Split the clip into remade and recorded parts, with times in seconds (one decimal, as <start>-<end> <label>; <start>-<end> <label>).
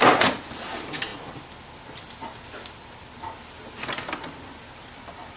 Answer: 0.0-1.1 recorded; 1.1-4.3 remade; 4.3-5.4 recorded